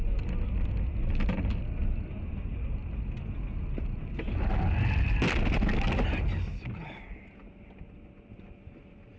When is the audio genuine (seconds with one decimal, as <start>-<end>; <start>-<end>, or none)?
0.0-9.2